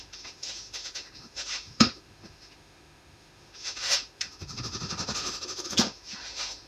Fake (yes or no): yes